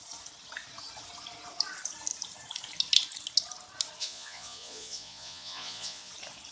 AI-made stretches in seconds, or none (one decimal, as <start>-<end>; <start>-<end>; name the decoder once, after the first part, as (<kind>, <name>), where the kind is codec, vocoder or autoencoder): 4.0-6.1 (vocoder, Vocos)